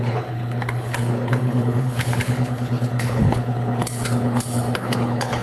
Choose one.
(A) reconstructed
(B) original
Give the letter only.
A